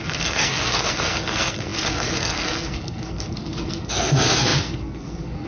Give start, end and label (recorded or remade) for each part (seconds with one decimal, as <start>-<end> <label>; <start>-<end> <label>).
0.0-5.5 remade